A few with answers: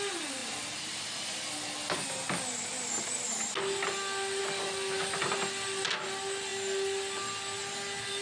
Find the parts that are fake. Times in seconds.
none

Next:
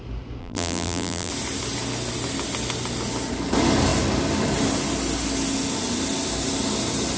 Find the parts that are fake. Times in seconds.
0.4-1.3 (vocoder, BigVGAN v2)

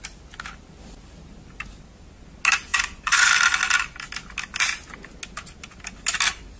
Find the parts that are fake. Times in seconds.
2.7-3.3 (vocoder, Vocos)

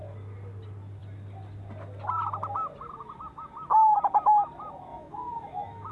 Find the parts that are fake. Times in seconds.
4.9-5.9 (autoencoder, DAC-VAE)